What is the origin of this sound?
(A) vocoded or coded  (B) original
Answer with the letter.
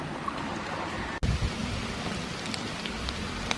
B